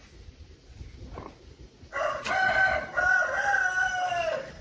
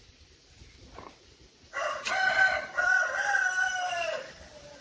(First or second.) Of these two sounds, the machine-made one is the second